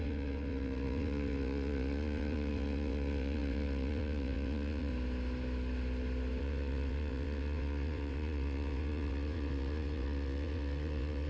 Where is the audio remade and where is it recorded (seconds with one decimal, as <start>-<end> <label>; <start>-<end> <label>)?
0.0-4.9 remade; 4.9-6.4 recorded; 6.4-11.3 remade